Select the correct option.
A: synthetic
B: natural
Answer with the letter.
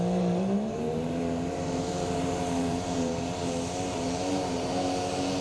A